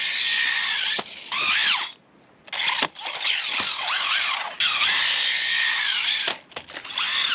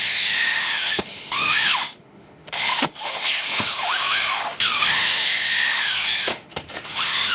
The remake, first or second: second